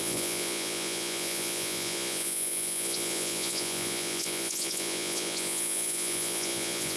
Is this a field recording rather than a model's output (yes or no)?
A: no